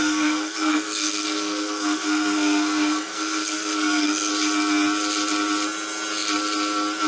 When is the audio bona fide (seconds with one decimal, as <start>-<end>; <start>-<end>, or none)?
4.3-7.1